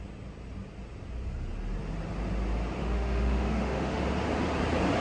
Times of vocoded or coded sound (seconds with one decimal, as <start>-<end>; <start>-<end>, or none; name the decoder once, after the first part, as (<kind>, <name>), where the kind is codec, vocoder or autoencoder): 2.8-4.0 (autoencoder, DAC-VAE)

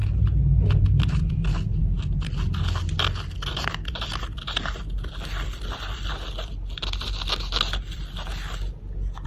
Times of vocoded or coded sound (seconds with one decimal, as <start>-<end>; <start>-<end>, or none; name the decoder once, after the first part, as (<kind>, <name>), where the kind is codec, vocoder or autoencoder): none